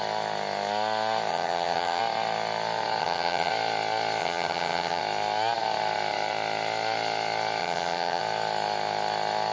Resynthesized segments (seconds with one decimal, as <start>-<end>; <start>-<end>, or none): 1.3-2.0; 3.0-3.5; 4.2-5.0; 7.6-8.2